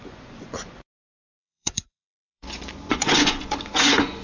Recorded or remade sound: remade